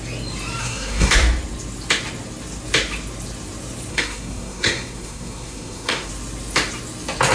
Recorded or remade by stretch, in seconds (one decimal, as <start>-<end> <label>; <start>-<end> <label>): 0.0-0.6 recorded; 0.6-1.1 remade; 1.1-3.9 recorded; 3.9-6.1 remade; 6.1-7.3 recorded